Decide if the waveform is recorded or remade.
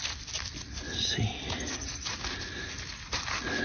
recorded